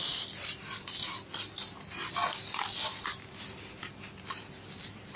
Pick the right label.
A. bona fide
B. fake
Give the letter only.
A